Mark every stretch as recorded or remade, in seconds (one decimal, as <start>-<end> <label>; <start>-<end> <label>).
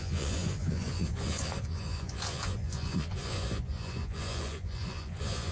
0.0-5.5 remade